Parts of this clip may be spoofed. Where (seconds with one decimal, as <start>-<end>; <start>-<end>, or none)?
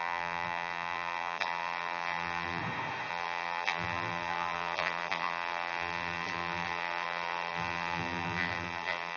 0.0-2.6; 3.1-9.2